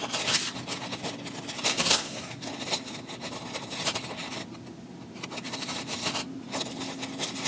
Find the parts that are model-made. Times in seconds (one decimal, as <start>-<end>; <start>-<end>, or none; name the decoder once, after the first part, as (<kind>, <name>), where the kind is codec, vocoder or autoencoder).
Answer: 1.7-2.5 (codec, SNAC)